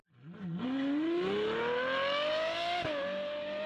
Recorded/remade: recorded